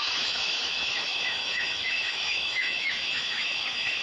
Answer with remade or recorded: remade